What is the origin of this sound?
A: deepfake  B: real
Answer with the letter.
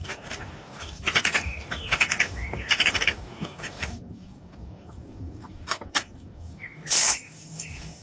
A